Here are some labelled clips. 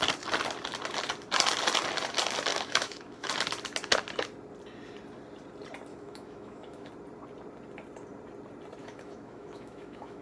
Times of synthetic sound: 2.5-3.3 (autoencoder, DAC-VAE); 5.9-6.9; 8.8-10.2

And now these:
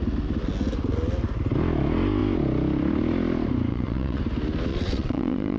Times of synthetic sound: 3.7-4.2 (vocoder, WaveNeXt); 4.7-5.6

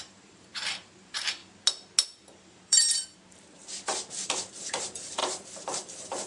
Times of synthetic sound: 0.0-1.4 (vocoder, BigVGAN v2); 2.5-3.6; 4.6-6.3